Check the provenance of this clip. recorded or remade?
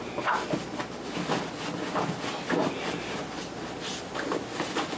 recorded